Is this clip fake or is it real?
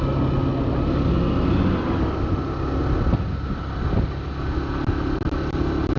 real